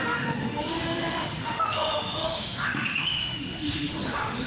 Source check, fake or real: fake